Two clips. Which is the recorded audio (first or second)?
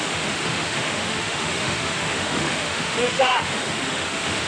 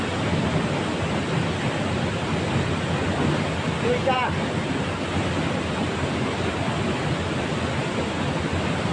second